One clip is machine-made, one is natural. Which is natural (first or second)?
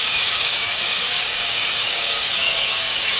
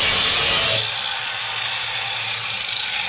second